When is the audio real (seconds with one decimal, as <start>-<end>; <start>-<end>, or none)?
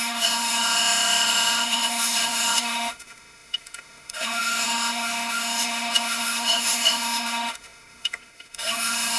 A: none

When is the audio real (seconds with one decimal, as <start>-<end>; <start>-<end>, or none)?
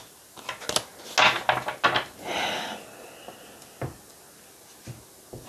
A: 0.0-5.5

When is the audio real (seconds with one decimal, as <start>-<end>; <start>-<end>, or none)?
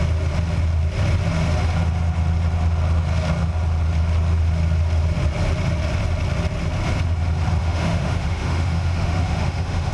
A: 0.0-7.6